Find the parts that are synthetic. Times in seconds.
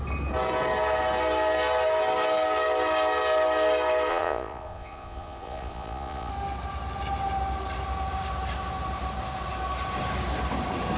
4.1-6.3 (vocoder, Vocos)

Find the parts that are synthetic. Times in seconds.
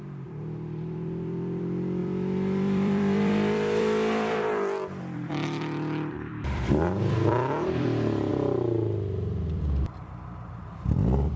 0.0-11.4 (vocoder, BigVGAN v2)